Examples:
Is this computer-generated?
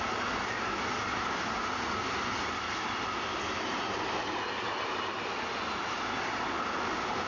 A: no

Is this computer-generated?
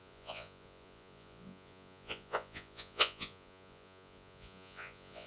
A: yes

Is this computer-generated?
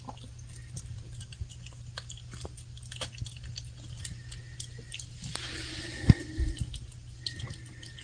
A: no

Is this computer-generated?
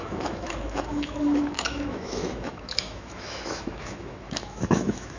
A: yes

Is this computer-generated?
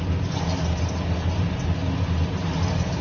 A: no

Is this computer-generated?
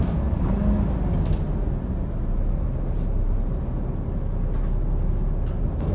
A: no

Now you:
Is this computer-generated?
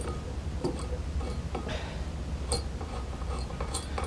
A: no